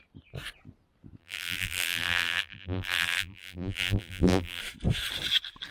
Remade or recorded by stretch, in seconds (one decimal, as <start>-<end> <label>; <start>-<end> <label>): 0.0-1.2 recorded; 1.2-4.6 remade; 4.6-5.7 recorded